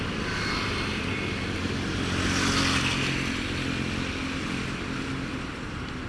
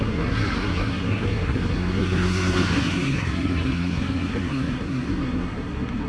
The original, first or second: first